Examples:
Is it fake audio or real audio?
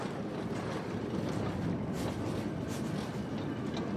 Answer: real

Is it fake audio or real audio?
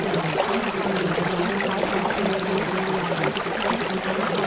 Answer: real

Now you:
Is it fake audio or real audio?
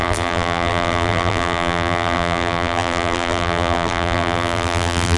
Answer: fake